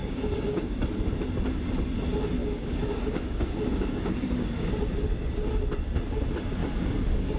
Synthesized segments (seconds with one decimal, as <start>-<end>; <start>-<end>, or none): 0.0-0.9; 2.4-4.7; 6.6-7.4